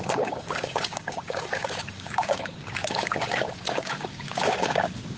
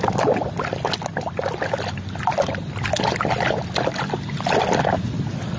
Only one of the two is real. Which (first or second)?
second